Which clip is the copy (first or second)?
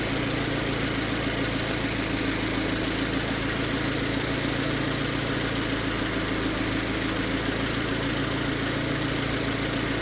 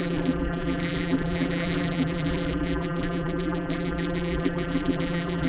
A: second